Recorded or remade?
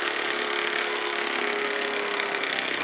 remade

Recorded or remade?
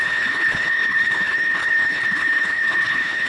remade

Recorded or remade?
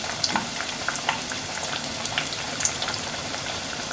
remade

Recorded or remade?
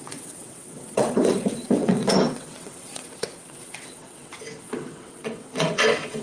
remade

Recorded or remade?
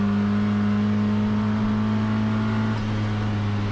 recorded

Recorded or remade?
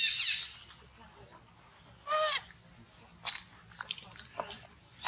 recorded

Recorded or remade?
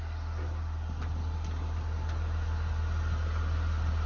recorded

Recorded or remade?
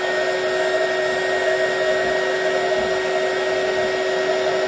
recorded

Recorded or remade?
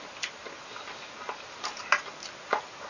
recorded